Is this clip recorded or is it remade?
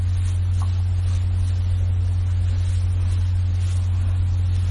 recorded